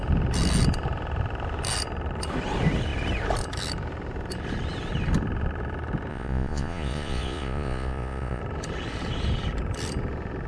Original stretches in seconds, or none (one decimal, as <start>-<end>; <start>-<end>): 0.0-6.1; 8.4-10.5